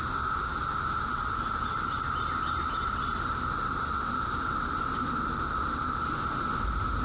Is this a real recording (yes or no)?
yes